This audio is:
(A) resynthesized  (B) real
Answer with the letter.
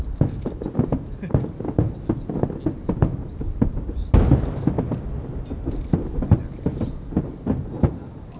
B